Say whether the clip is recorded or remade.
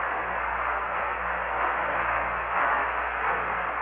remade